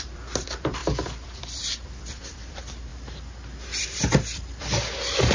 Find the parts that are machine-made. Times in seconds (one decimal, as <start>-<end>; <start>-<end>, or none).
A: 0.0-2.9; 3.8-5.3